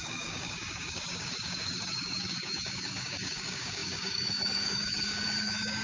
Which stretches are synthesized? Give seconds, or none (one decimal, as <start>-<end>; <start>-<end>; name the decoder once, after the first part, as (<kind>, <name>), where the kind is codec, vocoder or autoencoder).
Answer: 0.0-5.8 (codec, DAC)